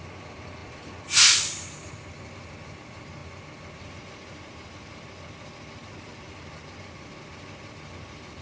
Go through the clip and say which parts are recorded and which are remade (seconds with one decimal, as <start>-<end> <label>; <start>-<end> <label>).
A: 0.0-8.4 remade